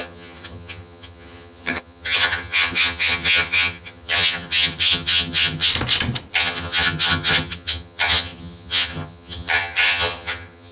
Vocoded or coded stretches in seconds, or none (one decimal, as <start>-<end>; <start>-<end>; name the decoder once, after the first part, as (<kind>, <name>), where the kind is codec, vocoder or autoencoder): 0.0-5.7 (vocoder, HiFi-GAN); 6.3-10.7